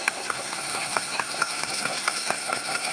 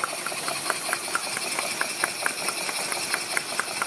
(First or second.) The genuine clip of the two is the second